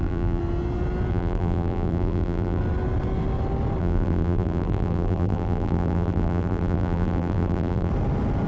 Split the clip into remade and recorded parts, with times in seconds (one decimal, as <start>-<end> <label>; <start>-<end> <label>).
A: 0.0-0.4 remade; 0.4-1.1 recorded; 1.1-2.6 remade; 2.6-3.8 recorded; 3.8-7.9 remade; 7.9-8.5 recorded

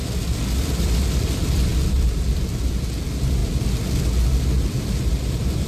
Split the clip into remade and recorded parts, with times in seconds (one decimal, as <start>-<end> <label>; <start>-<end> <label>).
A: 0.0-5.7 recorded

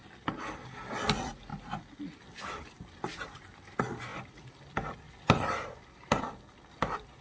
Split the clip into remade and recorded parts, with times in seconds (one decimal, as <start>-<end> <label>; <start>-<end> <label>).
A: 0.0-4.1 recorded; 4.1-6.2 remade; 6.2-7.2 recorded

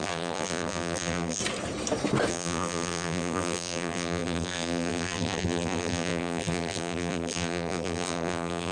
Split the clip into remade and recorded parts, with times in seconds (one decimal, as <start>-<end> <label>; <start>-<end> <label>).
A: 0.0-1.4 remade; 1.4-2.3 recorded; 2.3-8.7 remade

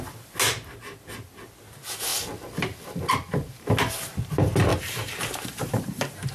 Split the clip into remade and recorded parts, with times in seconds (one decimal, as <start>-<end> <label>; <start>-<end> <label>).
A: 0.0-4.7 recorded; 4.7-6.3 remade